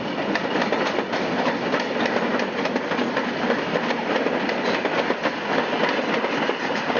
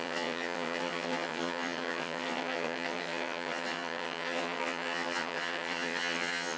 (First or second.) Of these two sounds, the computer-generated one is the second